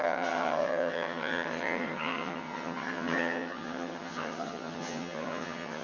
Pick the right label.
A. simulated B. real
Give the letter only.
A